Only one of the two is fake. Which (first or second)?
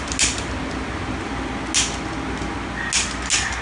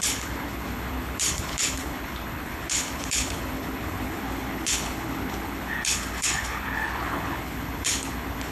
second